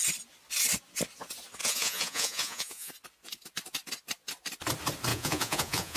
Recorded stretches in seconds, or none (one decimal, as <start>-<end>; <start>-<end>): 0.0-1.6; 2.9-5.1